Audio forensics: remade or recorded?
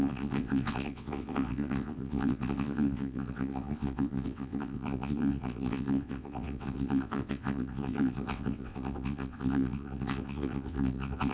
remade